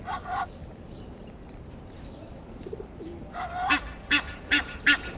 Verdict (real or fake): real